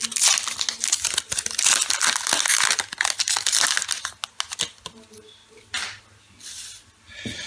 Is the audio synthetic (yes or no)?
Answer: no